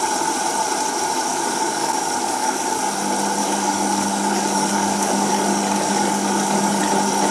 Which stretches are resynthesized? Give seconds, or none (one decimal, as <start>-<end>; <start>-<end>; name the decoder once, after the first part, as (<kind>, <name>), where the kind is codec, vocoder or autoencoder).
1.3-2.8 (codec, DAC); 3.4-6.8

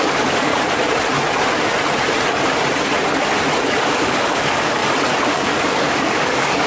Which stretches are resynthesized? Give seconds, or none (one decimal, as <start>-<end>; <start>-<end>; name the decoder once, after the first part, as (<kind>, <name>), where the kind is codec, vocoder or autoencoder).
0.0-0.5 (codec, DAC); 3.8-4.8; 5.3-6.7

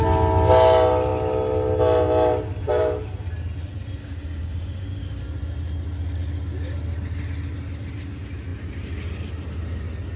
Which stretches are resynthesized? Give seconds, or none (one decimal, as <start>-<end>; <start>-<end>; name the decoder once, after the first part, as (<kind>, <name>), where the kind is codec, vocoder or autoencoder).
4.0-5.2 (codec, DAC)

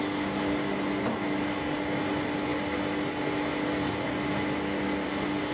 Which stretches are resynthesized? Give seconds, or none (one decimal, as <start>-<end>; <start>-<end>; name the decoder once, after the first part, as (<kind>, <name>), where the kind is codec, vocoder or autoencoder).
none

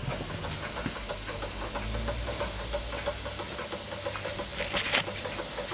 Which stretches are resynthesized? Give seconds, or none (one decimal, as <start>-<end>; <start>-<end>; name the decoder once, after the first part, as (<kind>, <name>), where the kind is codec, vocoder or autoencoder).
none

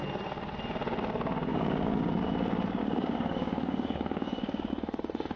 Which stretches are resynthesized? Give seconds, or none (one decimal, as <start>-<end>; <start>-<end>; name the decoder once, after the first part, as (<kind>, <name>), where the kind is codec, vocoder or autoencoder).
1.5-2.1 (codec, DAC); 2.8-4.7

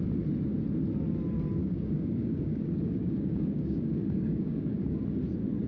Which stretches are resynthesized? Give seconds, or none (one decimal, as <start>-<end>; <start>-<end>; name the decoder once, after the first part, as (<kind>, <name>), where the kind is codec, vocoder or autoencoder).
1.6-5.0 (codec, DAC)